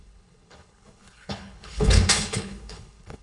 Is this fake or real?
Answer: fake